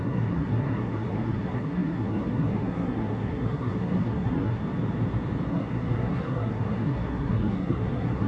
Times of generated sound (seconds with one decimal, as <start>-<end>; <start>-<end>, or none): 0.0-4.6; 5.5-8.3